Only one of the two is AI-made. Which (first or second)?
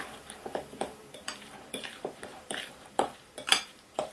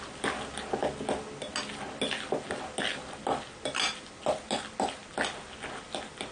first